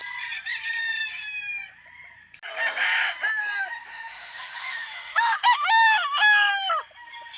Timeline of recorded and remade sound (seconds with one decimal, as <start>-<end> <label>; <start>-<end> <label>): 0.0-3.9 recorded; 3.9-6.5 remade; 6.5-7.4 recorded